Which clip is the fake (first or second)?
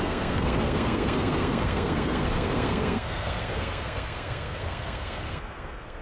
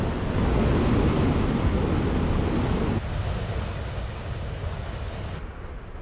first